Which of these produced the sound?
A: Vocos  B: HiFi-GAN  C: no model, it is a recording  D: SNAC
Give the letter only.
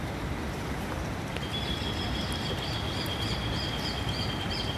C